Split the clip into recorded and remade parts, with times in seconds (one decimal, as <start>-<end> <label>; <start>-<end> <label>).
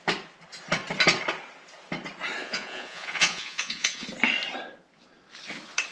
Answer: 0.0-2.4 recorded; 2.4-4.1 remade; 4.1-5.9 recorded